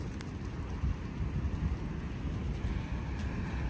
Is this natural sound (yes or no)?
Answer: yes